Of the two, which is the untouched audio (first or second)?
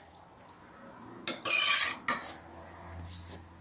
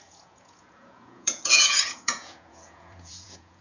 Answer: first